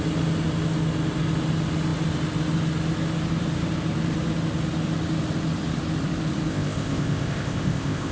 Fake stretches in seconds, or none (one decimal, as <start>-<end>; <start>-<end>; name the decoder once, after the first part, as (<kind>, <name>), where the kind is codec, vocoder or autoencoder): 6.5-8.1 (codec, ZipCodec)